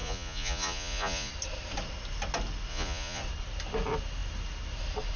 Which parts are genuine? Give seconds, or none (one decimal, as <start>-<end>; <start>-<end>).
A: 1.3-2.7; 3.2-5.2